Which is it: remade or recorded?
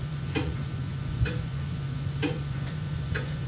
remade